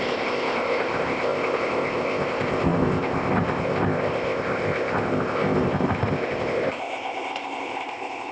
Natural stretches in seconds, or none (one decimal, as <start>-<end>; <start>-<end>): none